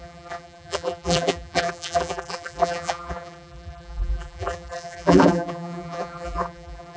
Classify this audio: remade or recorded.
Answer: remade